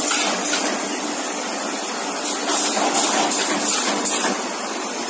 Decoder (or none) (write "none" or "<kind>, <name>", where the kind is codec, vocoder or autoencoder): none